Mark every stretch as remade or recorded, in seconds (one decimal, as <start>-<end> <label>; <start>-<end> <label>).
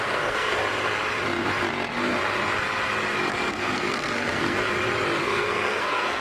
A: 0.0-0.6 remade; 0.6-3.5 recorded; 3.5-4.6 remade; 4.6-5.2 recorded; 5.2-6.2 remade